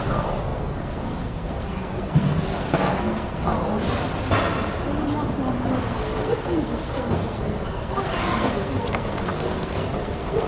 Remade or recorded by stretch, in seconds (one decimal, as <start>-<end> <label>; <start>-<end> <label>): 0.0-3.6 remade; 3.6-5.8 recorded; 5.8-10.5 remade